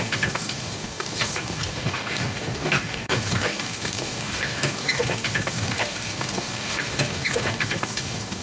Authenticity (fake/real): fake